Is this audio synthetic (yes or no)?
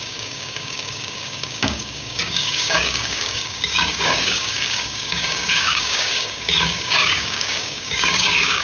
yes